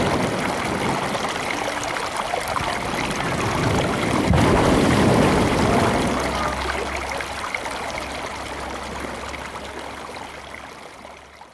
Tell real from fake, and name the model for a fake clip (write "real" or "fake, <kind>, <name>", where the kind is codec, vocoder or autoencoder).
real